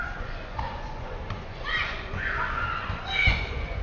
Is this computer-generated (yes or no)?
yes